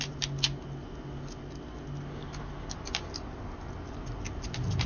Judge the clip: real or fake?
real